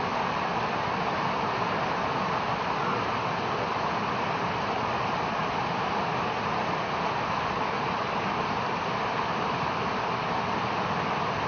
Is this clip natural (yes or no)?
yes